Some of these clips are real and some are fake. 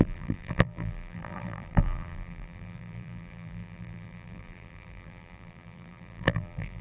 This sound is fake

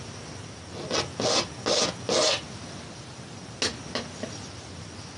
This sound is real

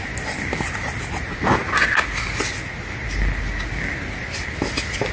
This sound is real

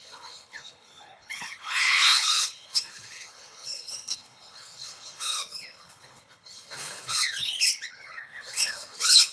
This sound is fake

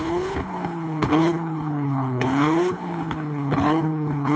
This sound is fake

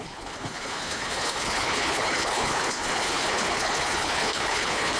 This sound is fake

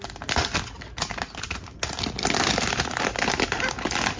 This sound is real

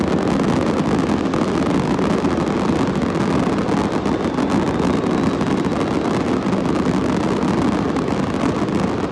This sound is real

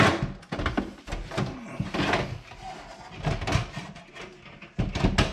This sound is real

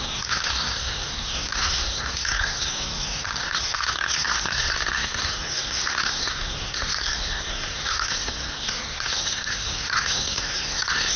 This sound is fake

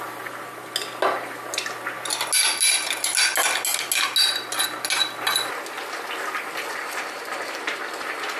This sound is real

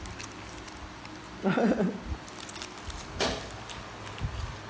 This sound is real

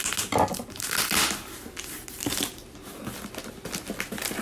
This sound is real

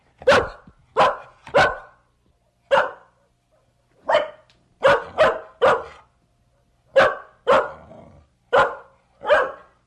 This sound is real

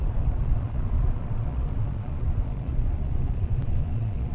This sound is fake